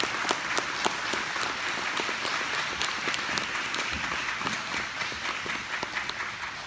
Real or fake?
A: real